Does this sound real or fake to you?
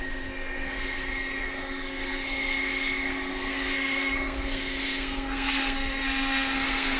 fake